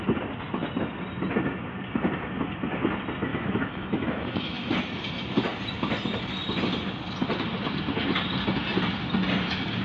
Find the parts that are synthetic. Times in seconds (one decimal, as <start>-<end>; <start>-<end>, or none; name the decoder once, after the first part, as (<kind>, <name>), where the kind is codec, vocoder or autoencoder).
3.3-4.7 (autoencoder, DAC-VAE)